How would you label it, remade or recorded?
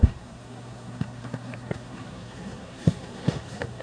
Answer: remade